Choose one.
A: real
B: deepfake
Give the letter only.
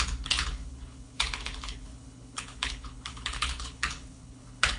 B